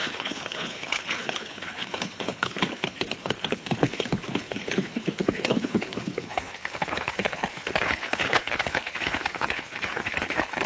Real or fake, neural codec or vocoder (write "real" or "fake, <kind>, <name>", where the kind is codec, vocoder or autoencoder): fake, codec, HILCodec